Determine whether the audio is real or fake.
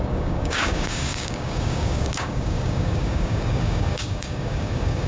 fake